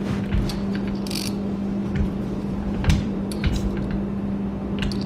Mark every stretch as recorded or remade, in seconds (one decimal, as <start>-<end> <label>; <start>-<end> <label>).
0.0-1.8 recorded; 1.8-3.5 remade; 3.5-5.1 recorded